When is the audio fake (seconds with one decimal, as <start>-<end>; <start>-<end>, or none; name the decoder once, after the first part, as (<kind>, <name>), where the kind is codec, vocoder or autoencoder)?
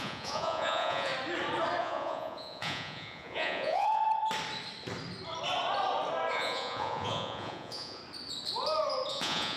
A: 0.0-1.1 (vocoder, Vocos); 1.8-4.0; 6.3-8.0; 9.1-9.6